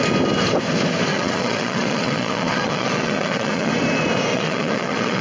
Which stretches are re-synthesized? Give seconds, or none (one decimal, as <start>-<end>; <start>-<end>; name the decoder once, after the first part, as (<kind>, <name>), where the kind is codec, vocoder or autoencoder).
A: 1.1-3.7 (vocoder, Vocos); 4.3-5.2